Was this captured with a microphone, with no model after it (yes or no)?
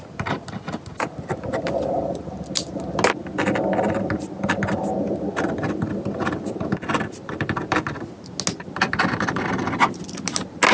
yes